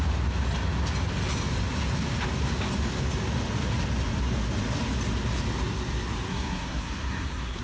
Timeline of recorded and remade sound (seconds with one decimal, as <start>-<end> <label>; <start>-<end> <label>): 0.0-6.3 recorded; 6.3-7.6 remade